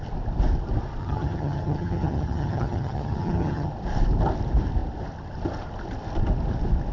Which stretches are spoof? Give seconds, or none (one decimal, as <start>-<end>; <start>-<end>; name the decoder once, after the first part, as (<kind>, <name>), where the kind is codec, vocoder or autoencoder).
1.0-3.7 (vocoder, HiFi-GAN)